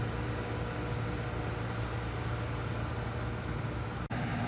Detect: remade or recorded recorded